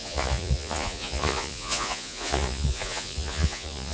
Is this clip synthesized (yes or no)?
yes